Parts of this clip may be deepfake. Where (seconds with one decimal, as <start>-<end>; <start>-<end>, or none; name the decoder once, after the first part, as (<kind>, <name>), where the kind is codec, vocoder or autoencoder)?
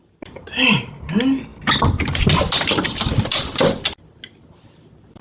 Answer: none